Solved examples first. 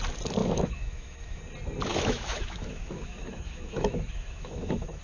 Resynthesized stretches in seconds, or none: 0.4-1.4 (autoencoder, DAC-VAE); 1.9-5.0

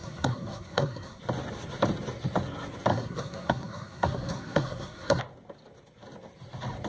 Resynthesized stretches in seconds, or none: 0.0-1.2 (codec, SNAC); 2.9-5.2

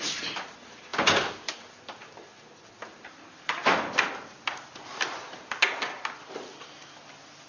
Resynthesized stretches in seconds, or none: none